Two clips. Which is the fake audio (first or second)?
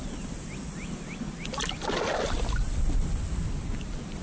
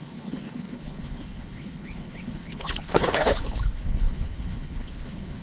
second